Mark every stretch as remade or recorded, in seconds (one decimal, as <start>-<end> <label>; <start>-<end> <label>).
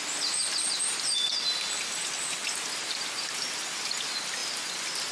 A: 0.0-5.1 recorded